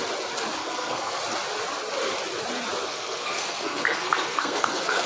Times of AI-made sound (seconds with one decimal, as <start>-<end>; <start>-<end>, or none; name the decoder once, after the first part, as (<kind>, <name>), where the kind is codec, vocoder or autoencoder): 0.6-1.2 (codec, SNAC); 2.8-5.1